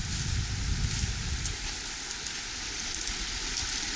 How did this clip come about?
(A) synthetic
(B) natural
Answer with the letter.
B